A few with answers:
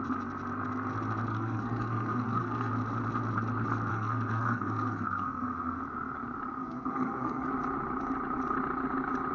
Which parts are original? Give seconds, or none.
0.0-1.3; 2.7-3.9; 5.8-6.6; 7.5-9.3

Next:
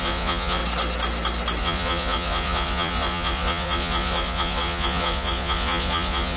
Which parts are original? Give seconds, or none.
0.6-1.6

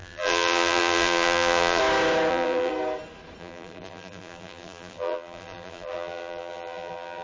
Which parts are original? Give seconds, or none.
1.8-2.3; 2.7-3.4

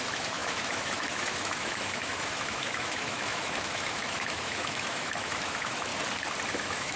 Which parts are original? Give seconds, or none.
5.9-6.5

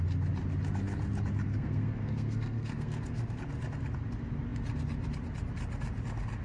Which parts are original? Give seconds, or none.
0.0-1.5; 3.4-6.4

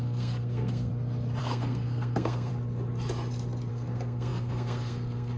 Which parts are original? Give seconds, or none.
0.9-1.4; 2.5-3.7

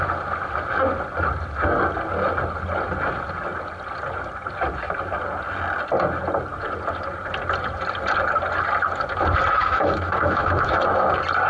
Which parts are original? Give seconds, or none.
0.0-9.6; 10.8-11.5